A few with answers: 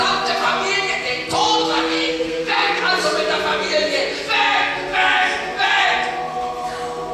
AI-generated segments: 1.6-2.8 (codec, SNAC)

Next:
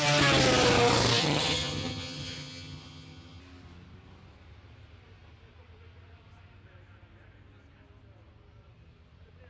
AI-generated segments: 1.2-3.4 (vocoder, HiFi-GAN)

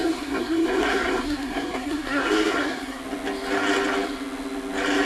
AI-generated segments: 0.0-3.0 (codec, SNAC)

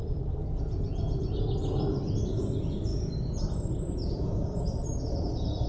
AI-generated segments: 2.9-5.0 (vocoder, BigVGAN v2)

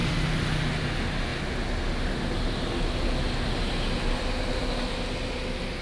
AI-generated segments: none